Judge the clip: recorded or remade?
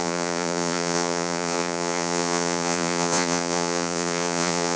remade